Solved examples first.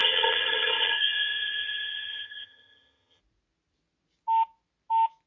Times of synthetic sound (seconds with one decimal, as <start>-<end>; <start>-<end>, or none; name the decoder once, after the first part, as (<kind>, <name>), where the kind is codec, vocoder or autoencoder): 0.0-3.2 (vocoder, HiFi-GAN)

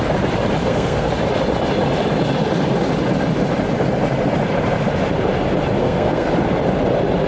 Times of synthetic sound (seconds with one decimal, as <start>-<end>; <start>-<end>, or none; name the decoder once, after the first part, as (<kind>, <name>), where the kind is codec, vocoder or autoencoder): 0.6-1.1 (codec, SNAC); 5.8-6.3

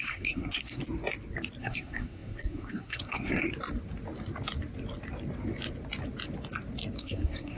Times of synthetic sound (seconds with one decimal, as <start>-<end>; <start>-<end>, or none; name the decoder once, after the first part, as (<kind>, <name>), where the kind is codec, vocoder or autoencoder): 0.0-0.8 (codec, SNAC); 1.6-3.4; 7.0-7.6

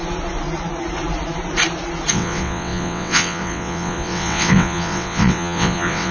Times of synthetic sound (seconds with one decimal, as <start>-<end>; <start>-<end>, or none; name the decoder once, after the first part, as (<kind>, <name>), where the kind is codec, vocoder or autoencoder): 2.1-6.1 (vocoder, WaveNeXt)